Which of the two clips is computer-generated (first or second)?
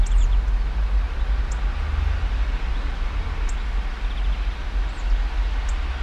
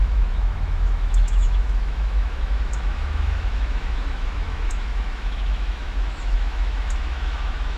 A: second